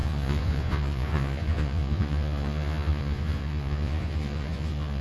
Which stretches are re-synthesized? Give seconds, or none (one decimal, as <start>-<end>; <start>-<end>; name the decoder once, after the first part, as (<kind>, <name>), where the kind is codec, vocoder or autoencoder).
0.0-5.0 (vocoder, Vocos)